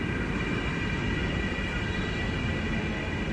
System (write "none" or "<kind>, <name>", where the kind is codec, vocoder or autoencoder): none